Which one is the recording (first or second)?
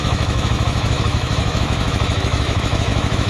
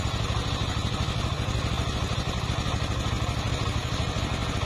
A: second